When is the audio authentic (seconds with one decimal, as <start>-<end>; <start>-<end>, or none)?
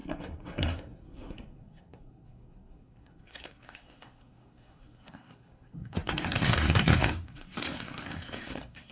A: none